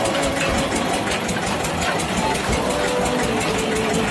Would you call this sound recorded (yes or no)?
yes